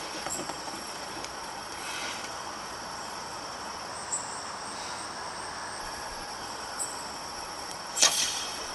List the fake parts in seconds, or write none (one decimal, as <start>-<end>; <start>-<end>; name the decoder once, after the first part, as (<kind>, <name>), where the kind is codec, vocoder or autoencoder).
0.0-3.9 (vocoder, Vocos); 5.8-8.7

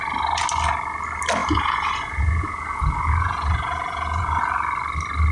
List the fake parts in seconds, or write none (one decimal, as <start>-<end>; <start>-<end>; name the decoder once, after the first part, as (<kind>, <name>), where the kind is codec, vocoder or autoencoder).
1.4-4.4 (vocoder, Vocos)